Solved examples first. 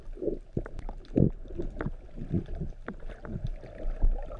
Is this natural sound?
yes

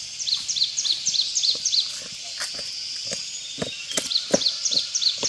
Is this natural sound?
yes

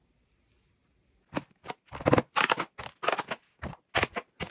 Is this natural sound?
yes